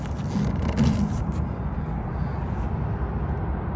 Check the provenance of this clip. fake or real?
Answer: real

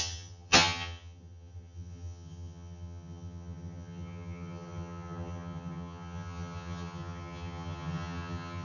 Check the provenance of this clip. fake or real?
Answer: fake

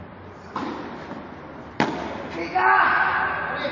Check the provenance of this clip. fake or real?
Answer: real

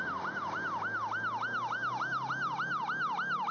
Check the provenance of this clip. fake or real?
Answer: real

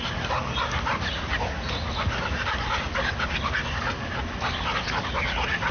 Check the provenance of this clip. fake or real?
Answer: real